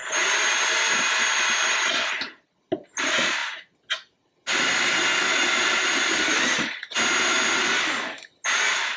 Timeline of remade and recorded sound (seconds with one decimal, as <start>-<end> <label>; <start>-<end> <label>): 0.0-9.0 recorded